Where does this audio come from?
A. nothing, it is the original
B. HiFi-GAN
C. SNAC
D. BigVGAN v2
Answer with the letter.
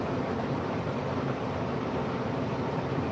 D